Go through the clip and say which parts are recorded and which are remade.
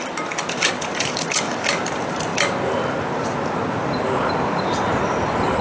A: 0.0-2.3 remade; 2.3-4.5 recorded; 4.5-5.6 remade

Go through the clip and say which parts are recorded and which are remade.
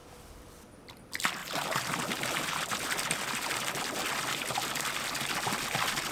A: 0.0-6.1 recorded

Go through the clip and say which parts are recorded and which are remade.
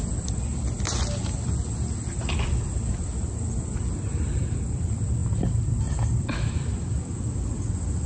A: 0.0-8.1 recorded